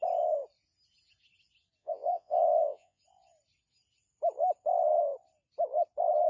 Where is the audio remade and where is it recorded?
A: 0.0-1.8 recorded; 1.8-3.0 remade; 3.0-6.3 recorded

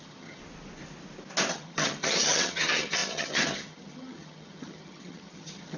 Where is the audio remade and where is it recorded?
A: 0.0-0.4 remade; 0.4-1.5 recorded; 1.5-5.8 remade

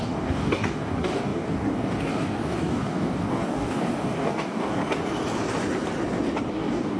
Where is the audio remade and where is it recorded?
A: 0.0-4.8 remade; 4.8-6.5 recorded; 6.5-7.0 remade

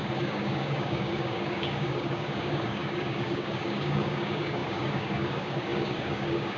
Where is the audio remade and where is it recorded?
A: 0.0-6.6 remade

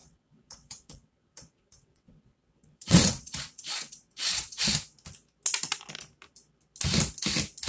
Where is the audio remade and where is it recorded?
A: 0.0-4.6 remade; 4.6-7.7 recorded

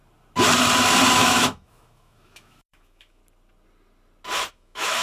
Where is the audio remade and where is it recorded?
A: 0.0-1.1 recorded; 1.1-3.2 remade; 3.2-4.5 recorded; 4.5-5.0 remade

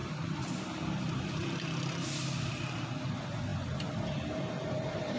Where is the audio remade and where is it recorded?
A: 0.0-3.1 remade; 3.1-3.5 recorded; 3.5-5.2 remade